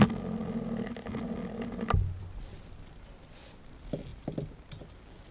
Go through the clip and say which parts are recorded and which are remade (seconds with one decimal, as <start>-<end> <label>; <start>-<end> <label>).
0.0-5.3 recorded